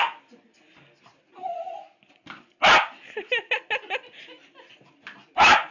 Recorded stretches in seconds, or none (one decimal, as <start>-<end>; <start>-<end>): 0.0-5.7